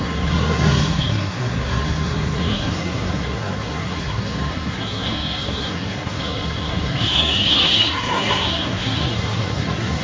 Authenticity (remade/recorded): remade